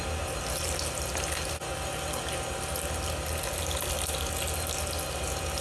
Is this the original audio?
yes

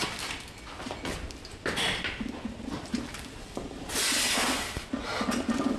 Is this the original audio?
yes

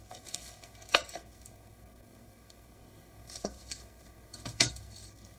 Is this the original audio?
no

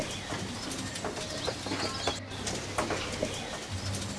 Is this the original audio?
yes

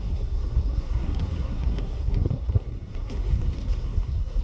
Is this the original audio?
no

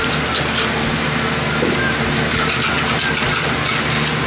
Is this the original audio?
yes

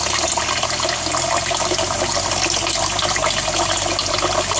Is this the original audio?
yes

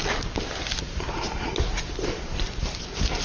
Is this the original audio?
yes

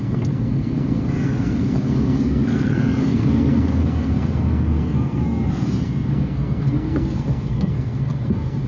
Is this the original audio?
no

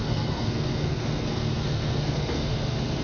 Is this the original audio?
no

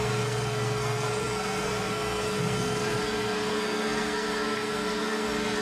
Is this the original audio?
no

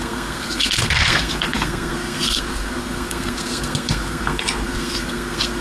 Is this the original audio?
no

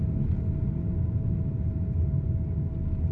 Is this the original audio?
yes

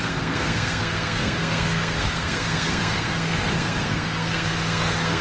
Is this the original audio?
no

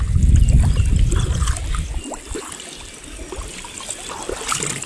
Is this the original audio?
yes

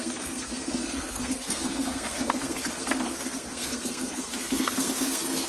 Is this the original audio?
no